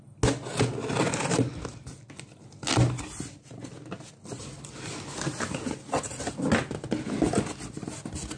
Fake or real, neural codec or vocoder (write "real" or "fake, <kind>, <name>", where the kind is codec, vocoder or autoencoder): real